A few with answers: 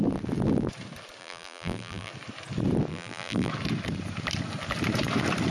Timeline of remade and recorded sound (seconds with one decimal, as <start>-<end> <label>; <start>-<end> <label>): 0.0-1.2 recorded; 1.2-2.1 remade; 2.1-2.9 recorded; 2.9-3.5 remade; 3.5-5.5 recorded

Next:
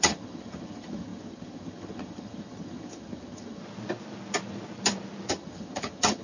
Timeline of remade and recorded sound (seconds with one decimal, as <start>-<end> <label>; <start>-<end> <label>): 0.0-3.6 remade; 3.6-5.3 recorded; 5.3-6.2 remade

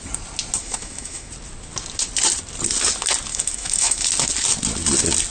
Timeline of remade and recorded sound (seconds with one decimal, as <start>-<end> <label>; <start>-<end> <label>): 0.0-0.6 recorded; 0.6-1.3 remade; 1.3-3.3 recorded; 3.3-4.1 remade; 4.1-5.3 recorded

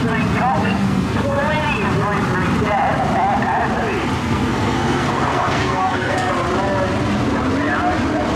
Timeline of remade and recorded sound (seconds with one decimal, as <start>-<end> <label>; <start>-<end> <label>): 0.0-0.6 recorded; 0.6-1.4 remade; 1.4-4.2 recorded; 4.2-6.3 remade; 6.3-8.4 recorded

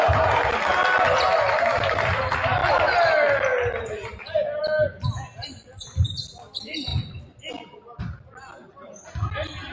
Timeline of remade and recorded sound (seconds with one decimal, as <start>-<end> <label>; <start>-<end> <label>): 0.0-9.7 recorded